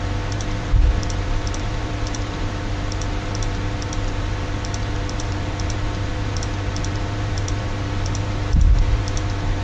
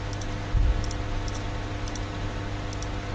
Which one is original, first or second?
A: second